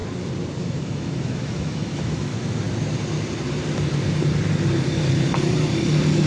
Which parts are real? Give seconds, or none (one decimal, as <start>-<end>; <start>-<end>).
0.0-0.6; 2.3-6.3